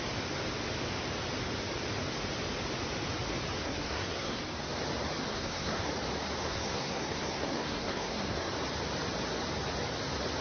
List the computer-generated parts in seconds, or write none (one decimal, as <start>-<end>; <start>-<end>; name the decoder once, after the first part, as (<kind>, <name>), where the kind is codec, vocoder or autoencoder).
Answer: 3.6-4.4 (codec, SNAC); 5.3-5.9; 6.4-8.5